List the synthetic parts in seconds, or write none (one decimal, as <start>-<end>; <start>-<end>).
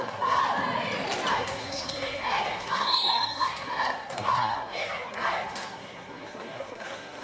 0.0-0.4; 1.3-7.2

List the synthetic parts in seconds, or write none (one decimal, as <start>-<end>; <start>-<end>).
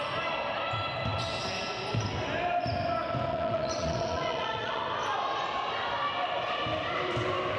3.3-4.8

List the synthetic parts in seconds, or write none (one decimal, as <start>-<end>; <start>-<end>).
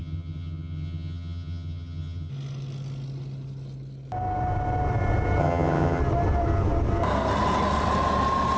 0.0-2.3; 5.4-6.0